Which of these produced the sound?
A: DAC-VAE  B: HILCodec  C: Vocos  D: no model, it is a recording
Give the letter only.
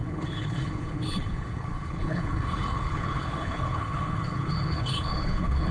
B